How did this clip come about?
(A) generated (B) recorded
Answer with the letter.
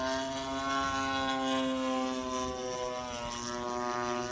B